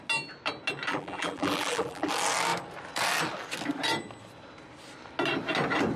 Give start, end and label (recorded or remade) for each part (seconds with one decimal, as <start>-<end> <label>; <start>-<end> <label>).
0.0-0.9 recorded; 0.9-2.1 remade; 2.1-6.0 recorded

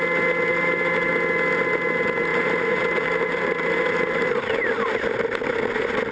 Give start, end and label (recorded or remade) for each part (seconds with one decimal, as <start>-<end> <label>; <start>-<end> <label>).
0.0-0.5 recorded; 0.5-1.1 remade; 1.1-2.3 recorded; 2.3-4.3 remade; 4.3-6.1 recorded